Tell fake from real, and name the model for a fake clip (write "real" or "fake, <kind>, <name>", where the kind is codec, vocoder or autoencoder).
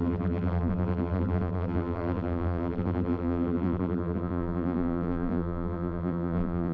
fake, vocoder, BigVGAN v2